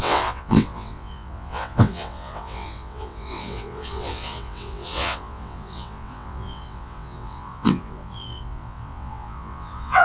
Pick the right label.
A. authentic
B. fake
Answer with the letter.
B